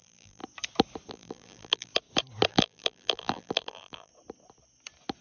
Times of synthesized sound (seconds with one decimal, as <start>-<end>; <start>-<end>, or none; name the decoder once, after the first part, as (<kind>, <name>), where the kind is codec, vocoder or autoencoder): 0.0-0.4 (vocoder, BigVGAN v2); 1.1-1.9; 2.5-4.1

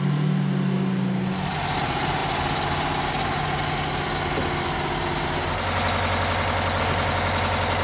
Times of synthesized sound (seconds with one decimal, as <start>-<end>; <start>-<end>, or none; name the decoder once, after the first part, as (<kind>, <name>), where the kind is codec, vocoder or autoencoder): none

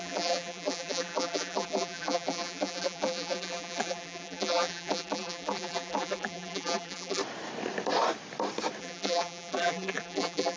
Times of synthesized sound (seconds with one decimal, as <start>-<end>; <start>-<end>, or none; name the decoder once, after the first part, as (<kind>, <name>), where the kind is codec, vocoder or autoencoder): 0.0-7.2 (vocoder, BigVGAN v2); 8.8-10.6

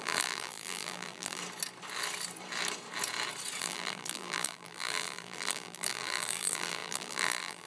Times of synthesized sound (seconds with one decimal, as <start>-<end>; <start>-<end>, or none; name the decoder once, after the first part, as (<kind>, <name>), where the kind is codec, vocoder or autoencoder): 0.0-1.4 (vocoder, BigVGAN v2); 3.6-7.7

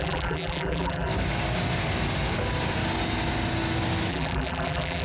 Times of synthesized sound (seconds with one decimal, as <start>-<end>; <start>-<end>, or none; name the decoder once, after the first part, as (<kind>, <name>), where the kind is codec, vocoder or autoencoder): 0.0-1.1 (vocoder, BigVGAN v2); 4.1-5.0